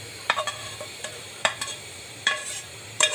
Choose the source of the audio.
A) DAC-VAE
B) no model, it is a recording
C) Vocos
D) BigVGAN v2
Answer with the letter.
D